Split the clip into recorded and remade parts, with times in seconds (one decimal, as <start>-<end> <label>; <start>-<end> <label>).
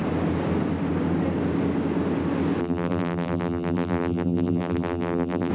0.0-2.6 recorded; 2.6-5.5 remade